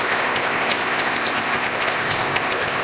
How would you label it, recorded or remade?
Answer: remade